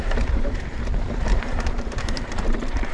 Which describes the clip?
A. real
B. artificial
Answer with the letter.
B